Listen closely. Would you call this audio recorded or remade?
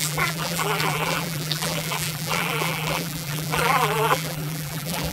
remade